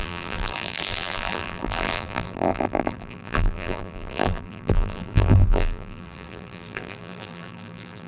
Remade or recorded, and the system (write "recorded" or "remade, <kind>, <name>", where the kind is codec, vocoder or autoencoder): remade, vocoder, BigVGAN v2